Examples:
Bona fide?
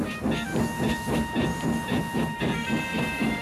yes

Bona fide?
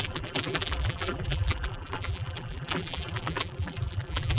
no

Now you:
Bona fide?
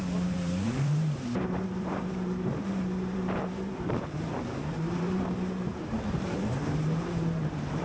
no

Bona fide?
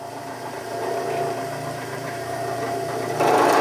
no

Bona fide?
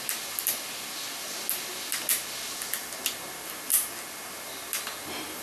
yes